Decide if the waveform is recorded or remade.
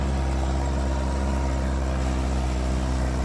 recorded